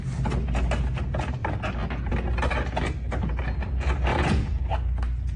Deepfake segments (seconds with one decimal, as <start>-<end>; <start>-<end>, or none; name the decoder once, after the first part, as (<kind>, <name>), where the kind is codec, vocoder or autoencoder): 4.1-4.6 (vocoder, Vocos)